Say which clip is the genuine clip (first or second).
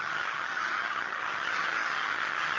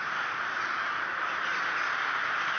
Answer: second